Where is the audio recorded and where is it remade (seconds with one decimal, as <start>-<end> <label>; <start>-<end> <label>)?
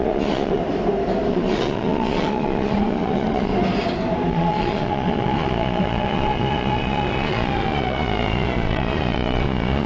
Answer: 0.0-0.6 remade; 0.6-1.3 recorded; 1.3-3.5 remade; 3.5-4.3 recorded; 4.3-9.9 remade